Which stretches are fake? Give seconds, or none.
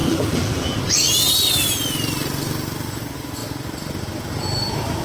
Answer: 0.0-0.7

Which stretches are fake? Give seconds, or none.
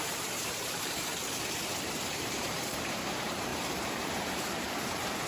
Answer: 0.0-1.1; 1.8-5.3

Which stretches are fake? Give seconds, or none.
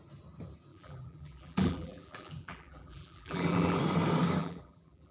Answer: 0.7-3.8; 4.4-5.1